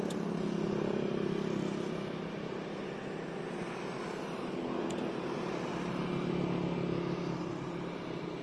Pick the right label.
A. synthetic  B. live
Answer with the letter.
B